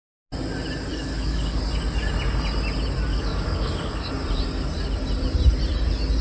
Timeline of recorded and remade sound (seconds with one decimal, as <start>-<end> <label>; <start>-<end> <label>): 0.0-0.9 recorded; 0.9-1.6 remade; 1.6-3.1 recorded; 3.1-4.1 remade; 4.1-6.2 recorded

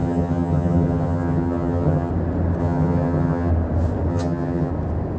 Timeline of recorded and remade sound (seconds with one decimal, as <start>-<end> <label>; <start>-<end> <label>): 0.0-2.1 remade; 2.1-2.6 recorded; 2.6-3.5 remade; 3.5-4.1 recorded; 4.1-4.7 remade; 4.7-5.2 recorded

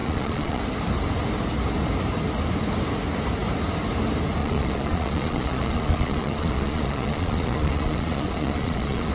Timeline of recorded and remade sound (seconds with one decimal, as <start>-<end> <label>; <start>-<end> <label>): 0.0-0.6 remade; 0.6-4.4 recorded; 4.4-9.1 remade

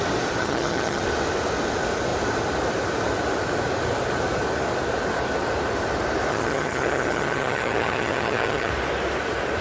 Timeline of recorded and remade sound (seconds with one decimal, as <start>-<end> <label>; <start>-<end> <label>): 0.0-0.4 recorded; 0.4-1.0 remade; 1.0-6.3 recorded; 6.3-8.7 remade; 8.7-9.6 recorded

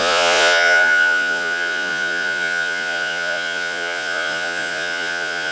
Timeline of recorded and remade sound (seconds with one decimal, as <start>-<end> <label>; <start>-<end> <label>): 0.0-5.5 remade

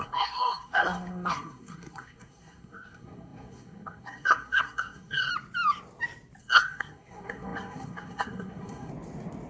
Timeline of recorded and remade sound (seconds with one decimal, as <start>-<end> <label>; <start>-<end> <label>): 0.0-5.3 remade; 5.3-6.4 recorded; 6.4-8.9 remade; 8.9-9.5 recorded

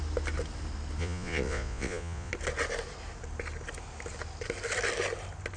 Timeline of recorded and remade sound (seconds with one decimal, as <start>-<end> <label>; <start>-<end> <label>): 0.0-1.0 recorded; 1.0-2.3 remade; 2.3-5.6 recorded

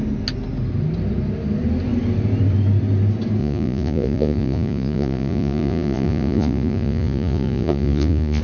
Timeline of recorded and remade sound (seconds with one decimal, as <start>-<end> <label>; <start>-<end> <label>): 0.0-3.4 recorded; 3.4-8.4 remade